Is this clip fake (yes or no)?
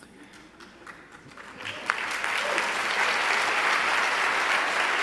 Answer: no